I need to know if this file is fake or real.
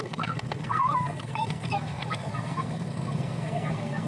fake